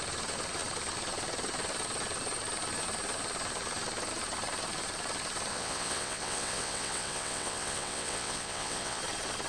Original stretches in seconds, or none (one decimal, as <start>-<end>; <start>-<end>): 0.0-5.5; 9.0-9.5